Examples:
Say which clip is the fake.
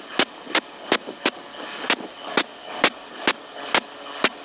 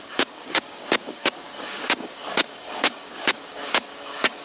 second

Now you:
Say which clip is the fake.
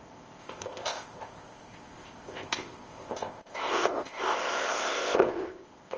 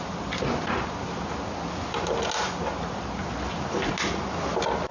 first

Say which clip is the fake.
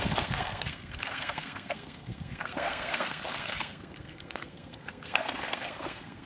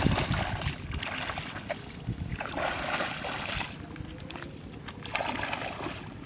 first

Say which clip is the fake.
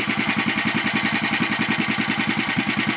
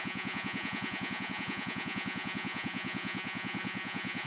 second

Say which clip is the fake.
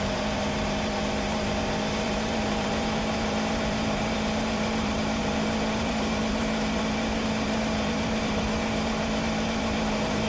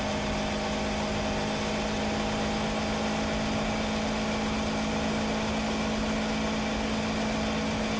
first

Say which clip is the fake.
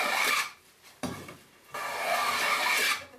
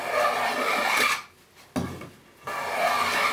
first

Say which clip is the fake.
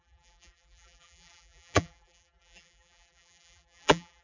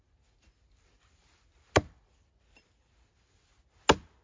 first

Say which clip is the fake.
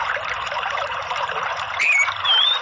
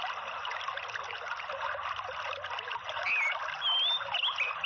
first